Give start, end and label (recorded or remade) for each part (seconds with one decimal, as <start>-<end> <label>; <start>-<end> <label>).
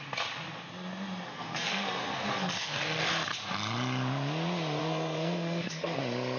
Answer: 0.0-1.3 recorded; 1.3-3.1 remade; 3.1-4.8 recorded; 4.8-6.0 remade; 6.0-6.4 recorded